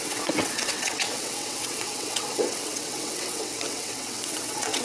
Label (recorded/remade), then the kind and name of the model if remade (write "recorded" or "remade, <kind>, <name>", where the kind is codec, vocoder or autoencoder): remade, vocoder, WaveNeXt